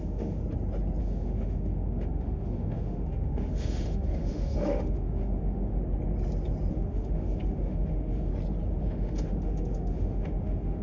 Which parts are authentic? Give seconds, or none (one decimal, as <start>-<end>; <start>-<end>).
0.4-1.0; 5.8-6.7; 8.3-8.8